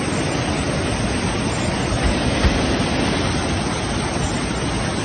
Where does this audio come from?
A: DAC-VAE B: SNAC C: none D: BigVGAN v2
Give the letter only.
C